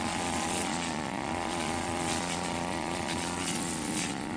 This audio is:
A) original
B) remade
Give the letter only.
B